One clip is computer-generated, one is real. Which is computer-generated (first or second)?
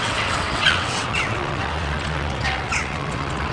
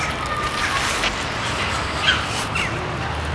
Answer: first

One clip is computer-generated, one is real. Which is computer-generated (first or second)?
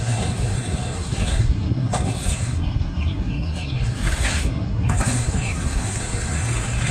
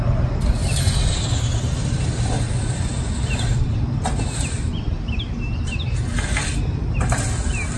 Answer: first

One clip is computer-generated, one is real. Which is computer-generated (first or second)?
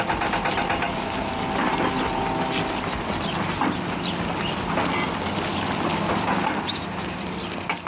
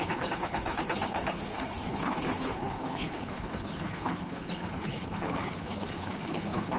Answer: second